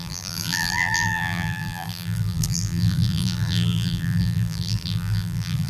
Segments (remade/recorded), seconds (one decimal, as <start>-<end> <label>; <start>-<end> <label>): 0.0-5.7 remade